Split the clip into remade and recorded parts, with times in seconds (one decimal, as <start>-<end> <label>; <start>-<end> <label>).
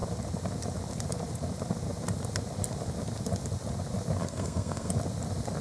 0.0-4.2 recorded; 4.2-4.9 remade; 4.9-5.6 recorded